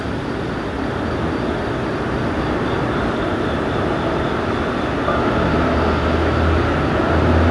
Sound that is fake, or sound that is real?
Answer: real